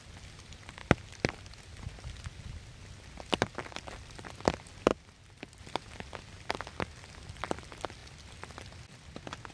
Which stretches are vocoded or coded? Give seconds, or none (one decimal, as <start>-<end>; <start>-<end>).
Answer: none